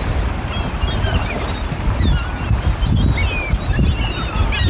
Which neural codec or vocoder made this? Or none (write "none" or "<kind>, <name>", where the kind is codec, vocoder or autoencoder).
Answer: none